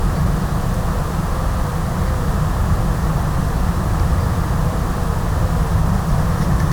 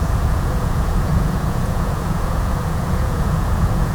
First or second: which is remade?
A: second